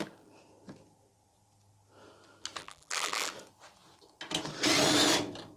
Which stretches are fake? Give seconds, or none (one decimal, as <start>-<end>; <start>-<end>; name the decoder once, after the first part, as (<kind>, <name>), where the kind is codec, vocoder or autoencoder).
2.6-3.3 (vocoder, BigVGAN v2)